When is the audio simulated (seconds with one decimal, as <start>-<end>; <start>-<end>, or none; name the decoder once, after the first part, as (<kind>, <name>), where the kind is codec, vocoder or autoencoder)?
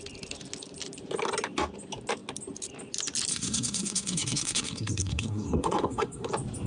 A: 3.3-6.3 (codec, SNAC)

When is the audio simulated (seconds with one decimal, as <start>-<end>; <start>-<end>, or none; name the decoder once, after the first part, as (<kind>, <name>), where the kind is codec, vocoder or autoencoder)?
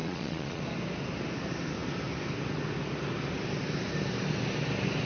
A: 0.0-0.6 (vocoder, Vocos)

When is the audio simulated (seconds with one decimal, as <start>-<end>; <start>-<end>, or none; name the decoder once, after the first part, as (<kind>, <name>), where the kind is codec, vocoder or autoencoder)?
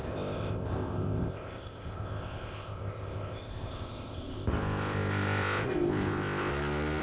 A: 0.0-6.5 (codec, ZipCodec)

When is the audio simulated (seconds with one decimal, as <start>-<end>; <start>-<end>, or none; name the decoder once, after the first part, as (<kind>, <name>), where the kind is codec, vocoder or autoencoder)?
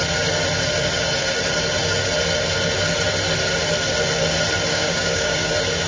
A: 4.7-5.5 (codec, DAC)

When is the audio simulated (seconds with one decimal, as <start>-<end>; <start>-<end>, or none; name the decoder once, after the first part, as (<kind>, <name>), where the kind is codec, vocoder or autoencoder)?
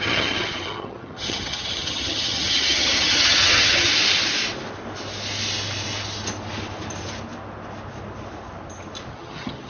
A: 0.0-3.9 (vocoder, HiFi-GAN); 9.1-9.7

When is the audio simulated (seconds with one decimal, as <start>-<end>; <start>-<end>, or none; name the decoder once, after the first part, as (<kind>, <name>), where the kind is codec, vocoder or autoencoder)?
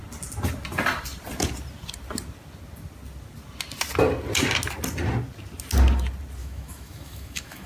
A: 6.4-7.7 (autoencoder, DAC-VAE)